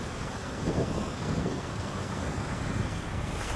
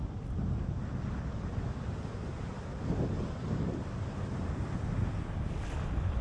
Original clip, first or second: second